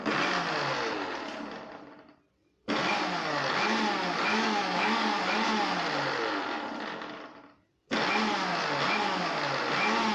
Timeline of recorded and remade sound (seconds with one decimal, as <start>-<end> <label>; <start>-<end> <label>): 0.0-4.3 recorded; 4.3-5.2 remade; 5.2-10.1 recorded